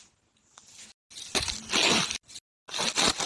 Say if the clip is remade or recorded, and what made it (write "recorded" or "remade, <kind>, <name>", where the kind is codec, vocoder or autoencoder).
recorded